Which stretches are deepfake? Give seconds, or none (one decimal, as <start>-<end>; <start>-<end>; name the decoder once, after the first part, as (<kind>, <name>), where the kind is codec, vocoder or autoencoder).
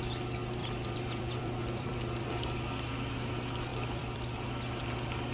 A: 0.6-2.3 (vocoder, BigVGAN v2); 3.7-4.5